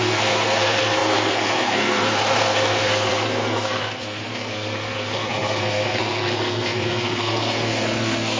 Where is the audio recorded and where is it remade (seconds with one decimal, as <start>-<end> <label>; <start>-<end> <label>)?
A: 0.0-8.4 remade